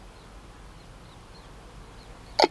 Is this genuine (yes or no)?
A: yes